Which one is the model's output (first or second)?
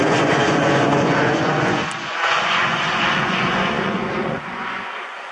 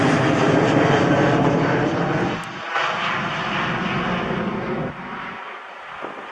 first